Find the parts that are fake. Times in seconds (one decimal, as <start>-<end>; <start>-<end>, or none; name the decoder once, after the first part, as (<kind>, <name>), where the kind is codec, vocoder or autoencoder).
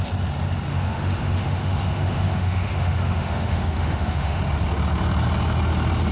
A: 0.7-4.4 (autoencoder, DAC-VAE)